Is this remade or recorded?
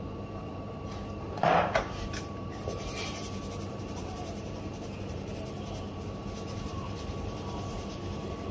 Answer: remade